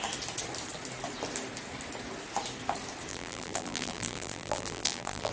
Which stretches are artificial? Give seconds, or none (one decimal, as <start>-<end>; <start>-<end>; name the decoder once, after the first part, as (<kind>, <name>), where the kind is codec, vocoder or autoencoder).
3.1-5.3 (vocoder, BigVGAN v2)